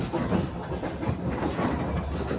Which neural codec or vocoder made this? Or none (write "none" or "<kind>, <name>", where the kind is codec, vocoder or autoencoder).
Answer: none